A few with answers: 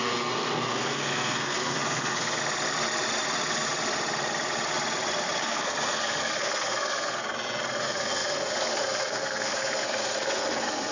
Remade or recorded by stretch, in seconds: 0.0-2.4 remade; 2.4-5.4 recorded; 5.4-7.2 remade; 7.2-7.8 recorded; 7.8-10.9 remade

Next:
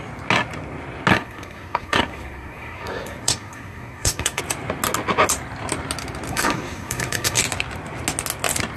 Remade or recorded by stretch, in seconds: 0.0-1.1 recorded; 1.1-4.4 remade; 4.4-6.3 recorded; 6.3-7.4 remade; 7.4-8.8 recorded

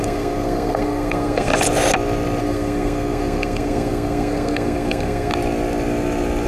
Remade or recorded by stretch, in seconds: 0.0-1.5 remade; 1.5-2.4 recorded; 2.4-5.3 remade; 5.3-6.5 recorded